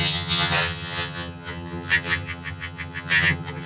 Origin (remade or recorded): remade